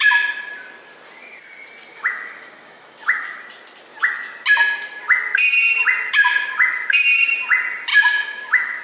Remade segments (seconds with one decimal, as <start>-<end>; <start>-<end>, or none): 1.9-3.4; 7.9-8.8